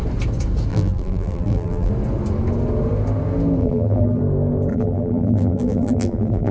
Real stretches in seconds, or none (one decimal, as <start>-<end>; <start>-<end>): 0.0-0.7; 1.9-3.6; 4.2-4.7